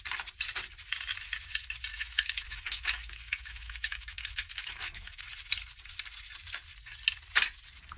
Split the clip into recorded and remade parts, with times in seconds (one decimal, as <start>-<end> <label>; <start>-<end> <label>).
0.0-1.9 recorded; 1.9-5.2 remade; 5.2-8.0 recorded